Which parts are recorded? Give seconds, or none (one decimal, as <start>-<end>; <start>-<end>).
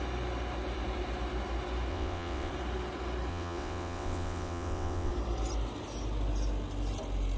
0.0-1.9; 2.5-3.3; 5.1-7.4